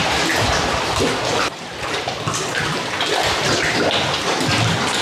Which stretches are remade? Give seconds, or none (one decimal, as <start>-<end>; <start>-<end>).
none